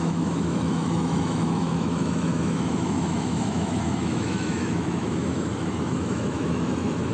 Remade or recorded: remade